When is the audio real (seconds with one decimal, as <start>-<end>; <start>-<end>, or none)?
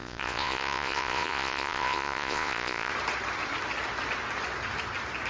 2.9-5.3